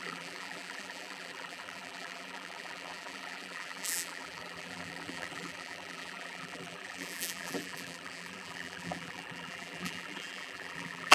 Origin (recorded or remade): remade